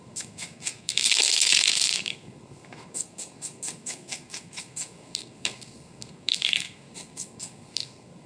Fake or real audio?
fake